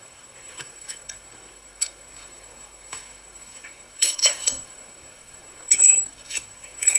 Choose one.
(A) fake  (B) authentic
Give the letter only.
A